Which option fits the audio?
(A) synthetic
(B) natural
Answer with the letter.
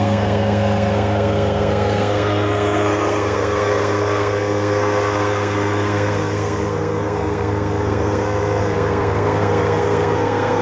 A